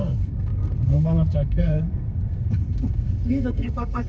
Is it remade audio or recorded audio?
remade